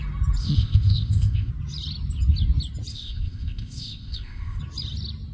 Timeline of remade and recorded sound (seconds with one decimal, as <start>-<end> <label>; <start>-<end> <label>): 0.0-0.4 recorded; 0.4-1.5 remade; 1.5-2.9 recorded; 2.9-4.6 remade; 4.6-5.3 recorded